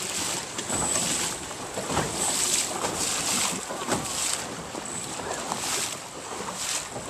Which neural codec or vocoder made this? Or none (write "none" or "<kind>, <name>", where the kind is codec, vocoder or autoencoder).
none